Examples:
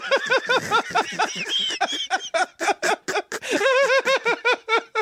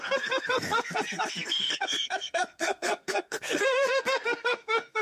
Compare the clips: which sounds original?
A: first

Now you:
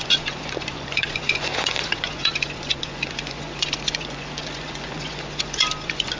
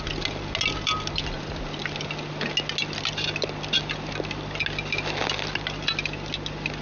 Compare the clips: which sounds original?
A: second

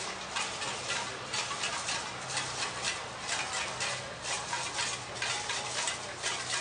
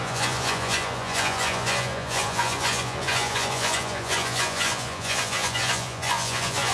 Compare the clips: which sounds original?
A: first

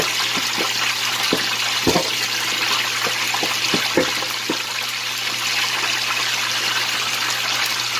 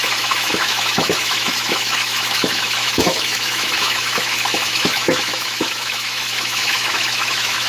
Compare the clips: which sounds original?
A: first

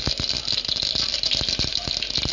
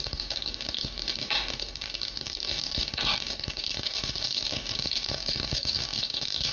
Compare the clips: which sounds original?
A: first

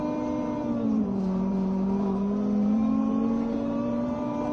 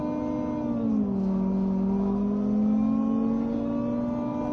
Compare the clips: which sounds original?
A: second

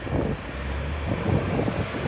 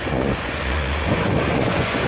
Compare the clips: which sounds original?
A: first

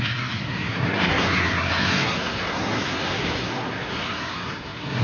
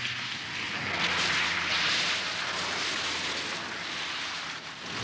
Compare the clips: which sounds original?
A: second